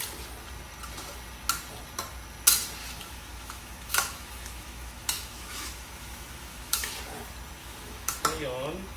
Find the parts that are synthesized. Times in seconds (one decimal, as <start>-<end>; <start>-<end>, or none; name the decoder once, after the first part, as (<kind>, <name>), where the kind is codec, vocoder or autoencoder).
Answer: 2.8-7.0 (autoencoder, DAC-VAE); 7.6-8.2